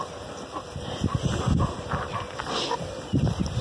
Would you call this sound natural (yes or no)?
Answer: yes